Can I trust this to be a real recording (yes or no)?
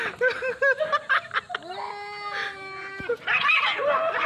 yes